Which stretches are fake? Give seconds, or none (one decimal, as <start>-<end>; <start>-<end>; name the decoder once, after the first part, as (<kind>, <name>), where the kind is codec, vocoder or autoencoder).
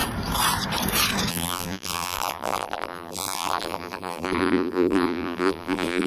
1.3-6.1 (vocoder, BigVGAN v2)